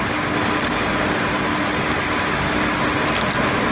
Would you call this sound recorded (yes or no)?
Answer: yes